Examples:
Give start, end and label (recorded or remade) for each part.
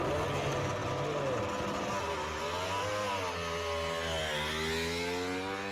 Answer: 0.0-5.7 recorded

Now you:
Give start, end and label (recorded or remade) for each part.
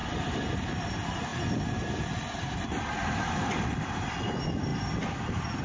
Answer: 0.0-5.6 recorded